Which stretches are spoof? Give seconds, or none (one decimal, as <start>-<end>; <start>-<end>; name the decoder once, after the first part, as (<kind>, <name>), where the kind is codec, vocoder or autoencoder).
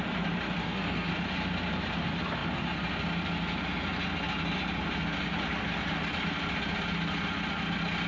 0.6-1.1 (codec, SNAC)